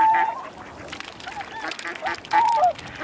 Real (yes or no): yes